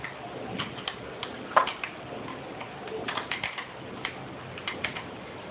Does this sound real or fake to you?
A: fake